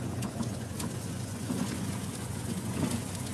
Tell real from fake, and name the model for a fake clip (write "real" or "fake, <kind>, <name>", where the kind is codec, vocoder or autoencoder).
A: fake, vocoder, Vocos